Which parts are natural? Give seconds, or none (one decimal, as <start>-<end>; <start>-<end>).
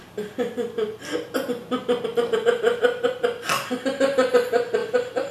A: 0.0-2.1; 3.1-4.8